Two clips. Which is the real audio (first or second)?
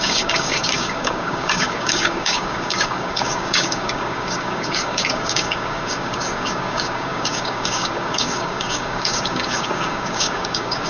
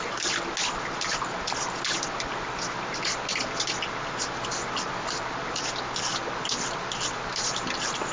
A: second